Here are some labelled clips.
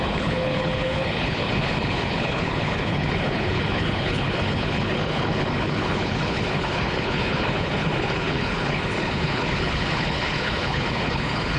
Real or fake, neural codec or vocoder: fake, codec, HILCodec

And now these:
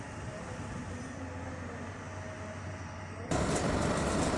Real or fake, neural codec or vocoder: real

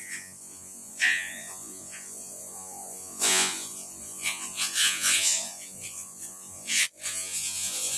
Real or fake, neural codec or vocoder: fake, vocoder, Vocos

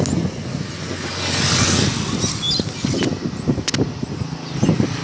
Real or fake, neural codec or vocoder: real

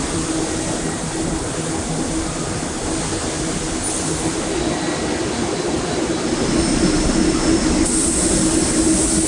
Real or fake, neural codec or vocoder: real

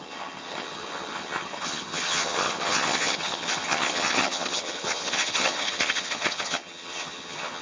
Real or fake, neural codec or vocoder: fake, vocoder, HiFi-GAN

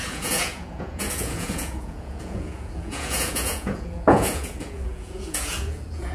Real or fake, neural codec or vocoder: fake, vocoder, Vocos